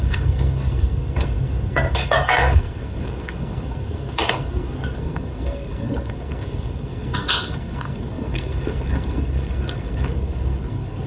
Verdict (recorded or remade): remade